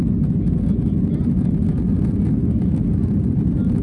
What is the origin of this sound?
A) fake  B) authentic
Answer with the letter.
B